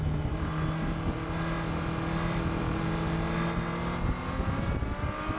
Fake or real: real